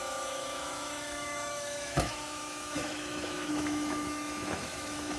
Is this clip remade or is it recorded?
remade